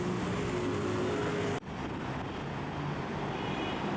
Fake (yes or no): no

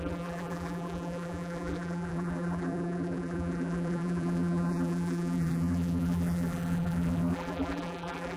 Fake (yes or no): yes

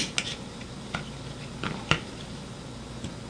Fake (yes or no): no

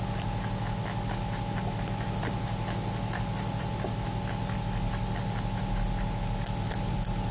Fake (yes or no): no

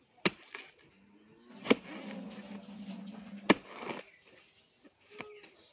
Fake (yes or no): no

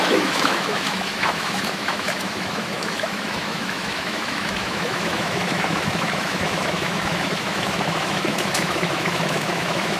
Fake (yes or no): yes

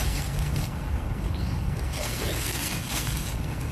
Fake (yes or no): yes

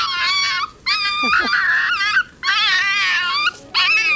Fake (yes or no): no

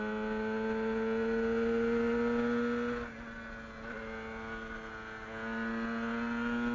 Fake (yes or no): no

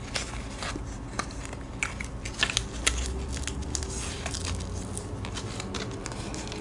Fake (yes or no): no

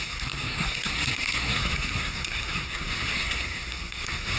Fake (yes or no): yes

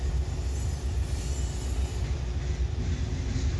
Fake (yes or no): no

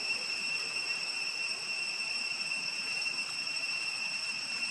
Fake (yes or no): yes